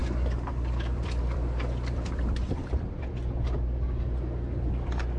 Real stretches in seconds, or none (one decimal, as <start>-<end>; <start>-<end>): 3.1-5.2